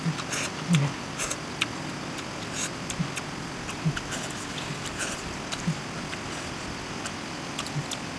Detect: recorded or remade recorded